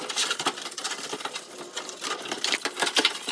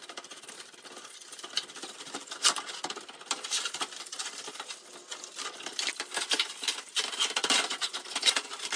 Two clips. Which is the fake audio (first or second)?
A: first